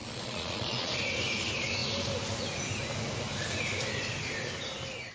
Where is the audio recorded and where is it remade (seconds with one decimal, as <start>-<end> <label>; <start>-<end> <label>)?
0.0-0.9 remade; 0.9-5.1 recorded